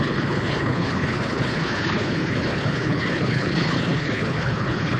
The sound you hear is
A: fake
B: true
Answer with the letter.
A